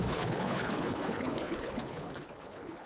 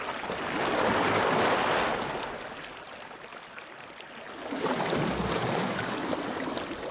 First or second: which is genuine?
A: second